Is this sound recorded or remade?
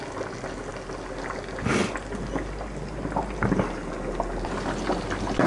recorded